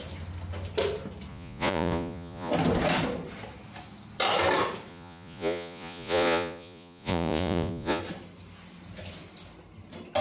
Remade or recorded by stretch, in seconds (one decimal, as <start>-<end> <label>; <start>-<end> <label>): 0.0-1.3 recorded; 1.3-2.5 remade; 2.5-4.9 recorded; 4.9-8.0 remade; 8.0-10.2 recorded